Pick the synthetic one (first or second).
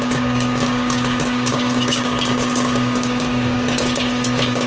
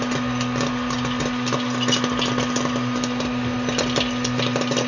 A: first